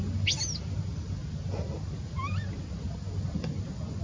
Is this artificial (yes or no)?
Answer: no